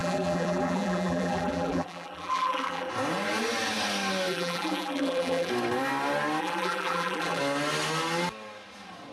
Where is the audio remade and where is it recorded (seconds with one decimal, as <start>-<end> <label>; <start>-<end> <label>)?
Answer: 0.0-2.9 remade; 2.9-4.3 recorded; 4.3-5.5 remade; 5.5-6.4 recorded; 6.4-7.4 remade; 7.4-9.1 recorded